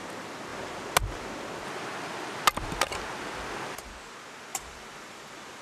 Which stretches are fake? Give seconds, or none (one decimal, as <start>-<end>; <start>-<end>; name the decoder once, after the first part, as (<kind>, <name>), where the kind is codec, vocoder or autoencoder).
4.5-5.6 (vocoder, BigVGAN v2)